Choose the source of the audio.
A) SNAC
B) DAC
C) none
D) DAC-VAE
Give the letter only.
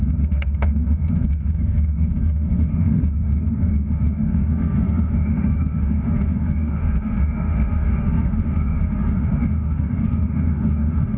D